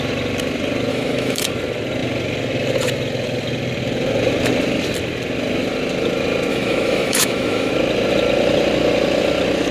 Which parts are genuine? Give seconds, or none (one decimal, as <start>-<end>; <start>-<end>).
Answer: 0.0-0.9; 1.5-6.5; 7.7-9.7